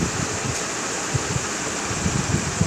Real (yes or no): yes